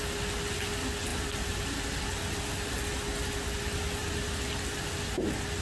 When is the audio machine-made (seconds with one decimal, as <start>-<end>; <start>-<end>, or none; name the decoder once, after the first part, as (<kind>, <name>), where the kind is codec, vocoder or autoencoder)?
4.0-4.5 (vocoder, BigVGAN v2)